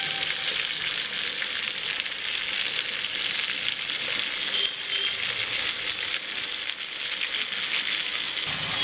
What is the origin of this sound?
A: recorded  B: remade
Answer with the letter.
A